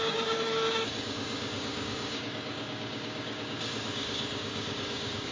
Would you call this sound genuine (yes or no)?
no